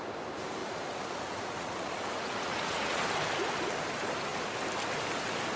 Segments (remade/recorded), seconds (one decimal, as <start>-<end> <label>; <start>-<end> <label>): 0.0-0.6 recorded; 0.6-3.0 remade; 3.0-5.6 recorded